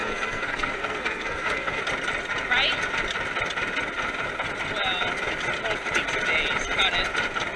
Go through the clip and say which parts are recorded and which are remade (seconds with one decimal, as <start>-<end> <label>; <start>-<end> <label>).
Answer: 0.0-1.8 remade; 1.8-7.6 recorded